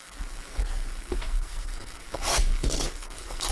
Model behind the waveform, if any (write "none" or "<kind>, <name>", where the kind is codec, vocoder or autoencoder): codec, SNAC